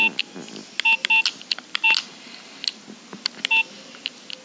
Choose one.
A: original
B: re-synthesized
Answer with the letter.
A